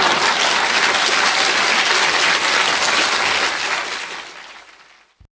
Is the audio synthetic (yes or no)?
no